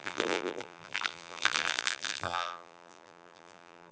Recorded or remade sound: remade